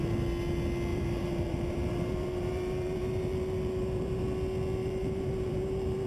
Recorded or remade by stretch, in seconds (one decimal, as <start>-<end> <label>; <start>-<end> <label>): 0.0-0.9 recorded; 0.9-4.2 remade; 4.2-4.8 recorded; 4.8-6.1 remade